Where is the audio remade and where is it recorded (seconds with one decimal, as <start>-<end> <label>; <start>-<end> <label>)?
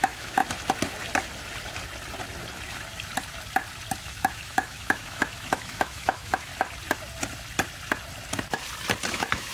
0.0-0.4 remade; 0.4-4.0 recorded; 4.0-6.5 remade; 6.5-9.1 recorded; 9.1-9.5 remade